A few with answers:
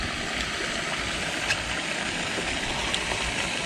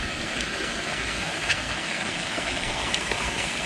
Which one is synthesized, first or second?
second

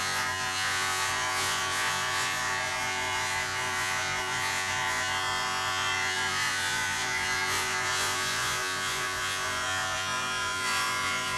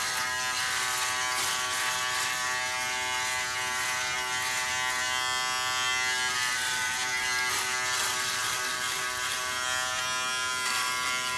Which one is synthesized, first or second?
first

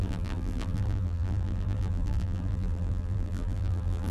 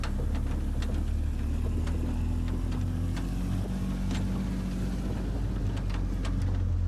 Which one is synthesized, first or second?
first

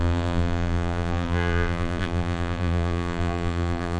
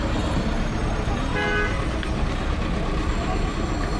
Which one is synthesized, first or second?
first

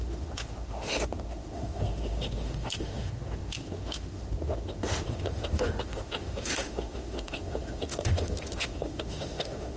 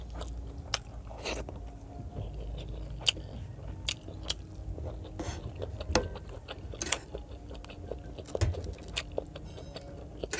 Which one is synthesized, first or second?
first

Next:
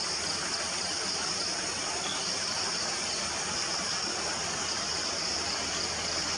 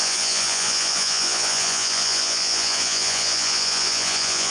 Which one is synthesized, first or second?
second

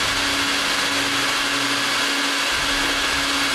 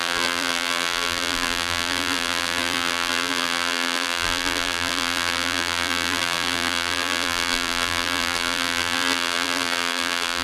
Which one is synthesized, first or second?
second